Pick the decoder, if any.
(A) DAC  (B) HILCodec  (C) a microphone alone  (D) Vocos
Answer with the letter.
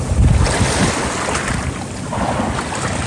C